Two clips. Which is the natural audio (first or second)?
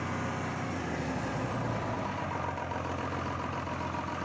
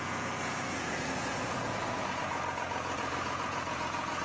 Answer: first